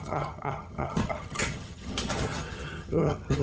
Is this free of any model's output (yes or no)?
no